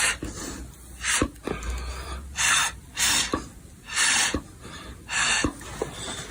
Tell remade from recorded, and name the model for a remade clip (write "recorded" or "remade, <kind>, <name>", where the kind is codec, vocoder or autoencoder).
recorded